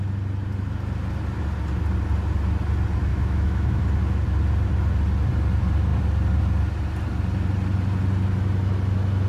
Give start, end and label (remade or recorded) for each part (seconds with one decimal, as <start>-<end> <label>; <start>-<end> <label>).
0.0-3.1 recorded; 3.1-3.8 remade; 3.8-9.3 recorded